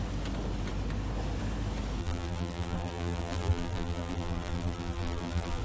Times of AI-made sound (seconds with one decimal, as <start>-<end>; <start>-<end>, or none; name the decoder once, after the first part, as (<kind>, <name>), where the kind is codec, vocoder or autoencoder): 2.0-5.6 (vocoder, BigVGAN v2)